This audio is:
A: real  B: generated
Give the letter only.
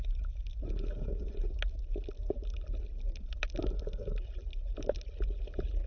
A